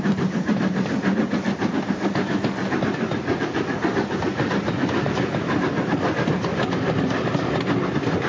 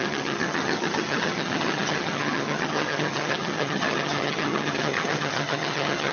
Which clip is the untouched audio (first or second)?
first